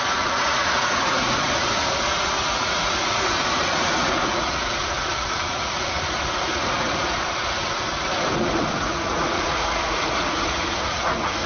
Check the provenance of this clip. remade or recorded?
remade